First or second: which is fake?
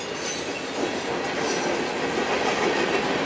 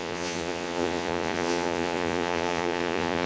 second